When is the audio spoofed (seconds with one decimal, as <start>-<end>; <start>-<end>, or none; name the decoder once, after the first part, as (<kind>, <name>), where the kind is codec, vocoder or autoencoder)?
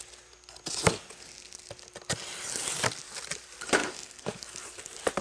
3.8-4.8 (codec, DAC)